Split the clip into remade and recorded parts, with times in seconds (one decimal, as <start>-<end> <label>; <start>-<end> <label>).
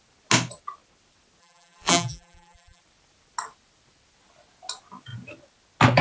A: 0.0-1.4 recorded; 1.4-2.8 remade; 2.8-6.0 recorded